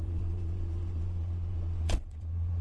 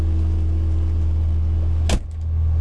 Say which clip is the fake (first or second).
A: first